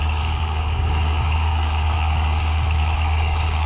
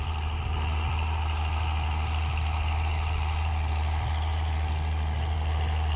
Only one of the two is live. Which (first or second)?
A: second